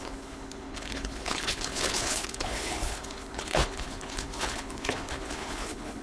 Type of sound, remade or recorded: remade